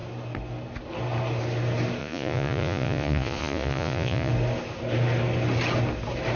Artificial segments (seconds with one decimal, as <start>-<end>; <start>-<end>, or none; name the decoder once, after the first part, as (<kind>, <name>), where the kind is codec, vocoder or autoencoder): 2.0-4.3 (vocoder, Vocos)